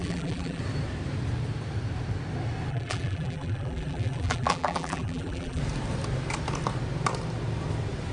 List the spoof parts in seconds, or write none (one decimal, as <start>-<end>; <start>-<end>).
0.0-0.6; 2.7-5.6